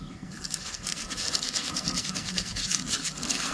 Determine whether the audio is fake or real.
fake